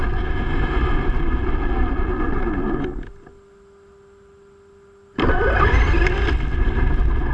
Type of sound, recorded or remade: recorded